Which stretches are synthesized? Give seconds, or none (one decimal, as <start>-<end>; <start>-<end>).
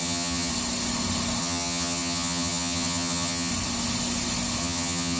0.0-0.5; 1.4-3.5; 4.6-5.2